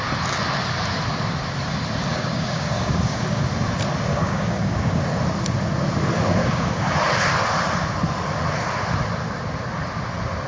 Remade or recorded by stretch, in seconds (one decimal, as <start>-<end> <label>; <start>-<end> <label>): 0.0-2.1 recorded; 2.1-3.4 remade; 3.4-4.1 recorded; 4.1-5.0 remade; 5.0-6.4 recorded; 6.4-7.0 remade; 7.0-10.5 recorded